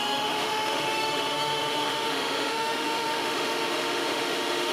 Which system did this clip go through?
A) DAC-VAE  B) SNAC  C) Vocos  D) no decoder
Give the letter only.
A